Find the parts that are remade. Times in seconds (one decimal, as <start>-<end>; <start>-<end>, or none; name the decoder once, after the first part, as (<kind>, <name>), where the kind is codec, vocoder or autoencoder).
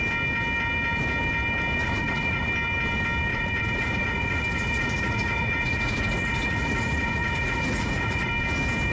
1.8-2.5 (vocoder, Vocos); 3.3-8.3